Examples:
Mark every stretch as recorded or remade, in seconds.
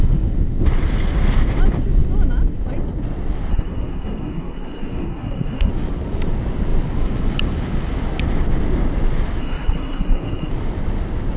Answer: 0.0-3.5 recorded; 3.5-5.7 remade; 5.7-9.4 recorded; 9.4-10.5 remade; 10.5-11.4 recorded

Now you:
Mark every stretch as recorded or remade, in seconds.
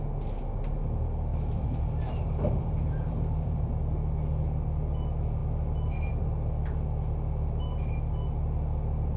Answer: 0.0-1.3 recorded; 1.3-3.7 remade; 3.7-9.2 recorded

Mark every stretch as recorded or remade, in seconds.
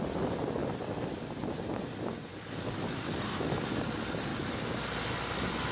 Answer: 0.0-5.7 recorded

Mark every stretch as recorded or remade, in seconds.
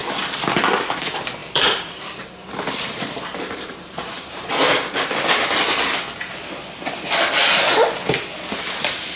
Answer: 0.0-1.4 recorded; 1.4-4.5 remade; 4.5-9.2 recorded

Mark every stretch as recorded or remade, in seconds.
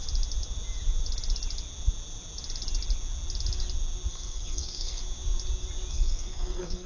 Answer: 0.0-4.1 recorded; 4.1-5.0 remade; 5.0-5.9 recorded; 5.9-6.9 remade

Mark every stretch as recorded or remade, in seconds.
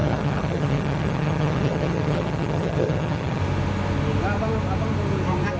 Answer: 0.0-3.4 remade; 3.4-5.6 recorded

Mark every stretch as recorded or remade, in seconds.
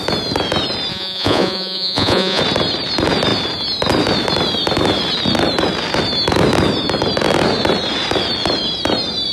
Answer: 0.0-0.9 recorded; 0.9-2.4 remade; 2.4-9.3 recorded